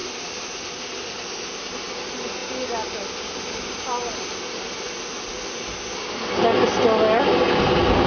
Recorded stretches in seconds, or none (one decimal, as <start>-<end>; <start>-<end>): 0.0-8.1